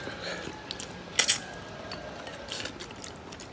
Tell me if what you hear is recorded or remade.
recorded